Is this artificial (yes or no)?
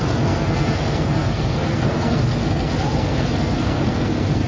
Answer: yes